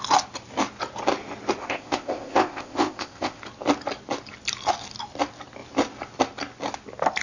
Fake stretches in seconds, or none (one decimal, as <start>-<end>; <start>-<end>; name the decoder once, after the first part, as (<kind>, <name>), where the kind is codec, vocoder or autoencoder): 1.6-3.4 (codec, ZipCodec)